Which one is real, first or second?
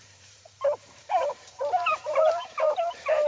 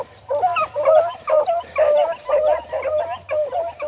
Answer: second